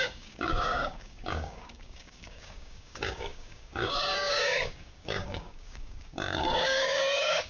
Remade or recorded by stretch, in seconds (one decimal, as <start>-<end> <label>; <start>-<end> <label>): 0.0-7.5 remade